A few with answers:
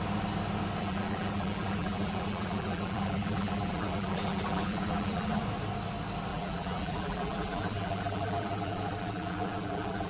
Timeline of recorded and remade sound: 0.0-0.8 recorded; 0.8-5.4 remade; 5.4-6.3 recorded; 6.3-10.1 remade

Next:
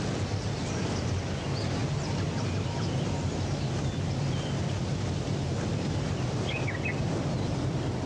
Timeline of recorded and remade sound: 0.0-1.8 remade; 1.8-5.9 recorded; 5.9-8.1 remade